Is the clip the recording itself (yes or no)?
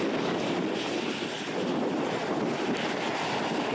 yes